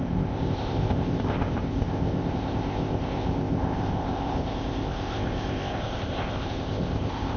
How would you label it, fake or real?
fake